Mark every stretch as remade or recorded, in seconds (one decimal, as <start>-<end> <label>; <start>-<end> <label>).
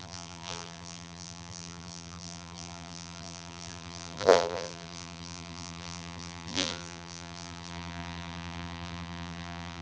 0.0-9.8 remade